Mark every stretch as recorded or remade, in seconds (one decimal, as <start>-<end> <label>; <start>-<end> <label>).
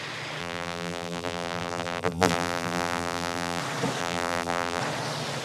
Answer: 0.0-0.4 recorded; 0.4-3.6 remade; 3.6-4.0 recorded; 4.0-4.8 remade; 4.8-5.4 recorded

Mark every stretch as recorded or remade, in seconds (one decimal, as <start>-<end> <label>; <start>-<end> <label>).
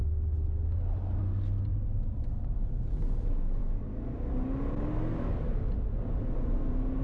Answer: 0.0-7.0 recorded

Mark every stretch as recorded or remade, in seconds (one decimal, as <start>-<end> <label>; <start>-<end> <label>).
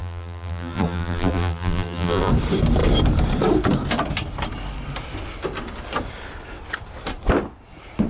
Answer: 0.0-2.3 remade; 2.3-8.1 recorded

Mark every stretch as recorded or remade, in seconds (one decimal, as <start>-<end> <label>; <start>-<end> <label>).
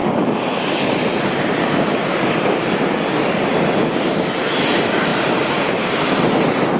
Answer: 0.0-5.1 recorded; 5.1-6.8 remade